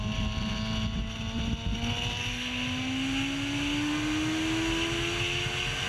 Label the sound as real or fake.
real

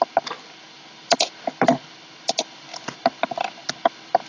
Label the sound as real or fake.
real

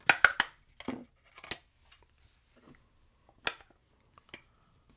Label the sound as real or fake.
real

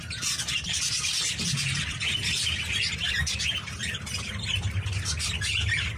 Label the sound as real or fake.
real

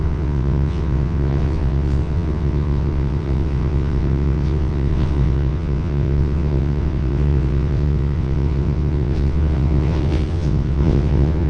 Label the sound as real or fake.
fake